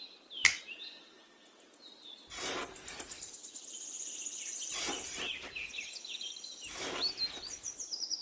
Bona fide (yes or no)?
yes